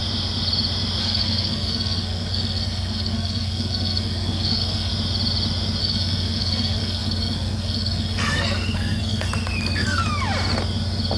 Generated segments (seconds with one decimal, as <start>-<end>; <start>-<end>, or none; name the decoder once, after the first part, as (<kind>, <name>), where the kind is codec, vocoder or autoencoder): 1.0-4.9 (codec, SNAC); 5.8-10.0